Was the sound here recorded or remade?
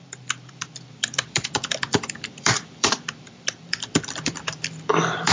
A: remade